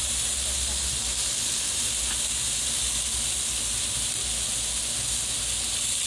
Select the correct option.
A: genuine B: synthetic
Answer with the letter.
A